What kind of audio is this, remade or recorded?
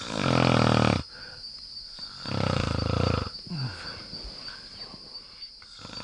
recorded